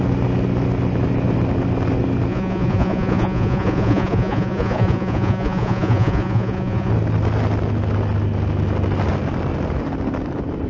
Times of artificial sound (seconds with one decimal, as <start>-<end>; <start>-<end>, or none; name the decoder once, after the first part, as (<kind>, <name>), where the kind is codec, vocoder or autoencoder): 2.3-6.9 (vocoder, Vocos)